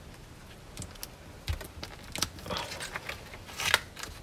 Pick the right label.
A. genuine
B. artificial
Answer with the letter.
A